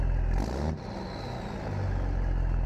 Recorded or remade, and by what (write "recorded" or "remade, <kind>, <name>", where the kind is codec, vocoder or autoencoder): recorded